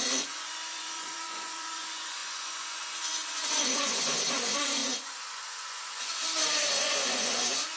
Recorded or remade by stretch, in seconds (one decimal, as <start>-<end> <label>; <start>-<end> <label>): 0.0-6.2 remade; 6.2-6.8 recorded; 6.8-7.8 remade